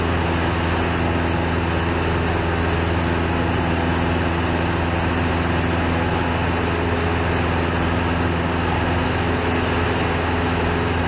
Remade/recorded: recorded